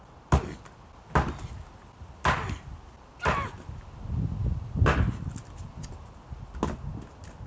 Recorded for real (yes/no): yes